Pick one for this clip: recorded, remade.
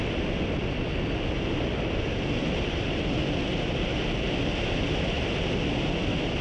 recorded